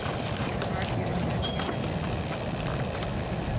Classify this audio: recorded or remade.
recorded